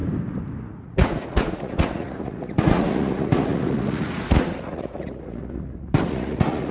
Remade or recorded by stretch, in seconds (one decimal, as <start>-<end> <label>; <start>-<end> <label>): 0.0-0.6 recorded; 0.6-6.7 remade